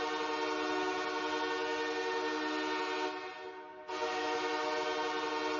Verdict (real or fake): real